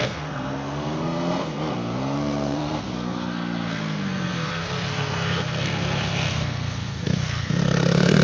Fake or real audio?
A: fake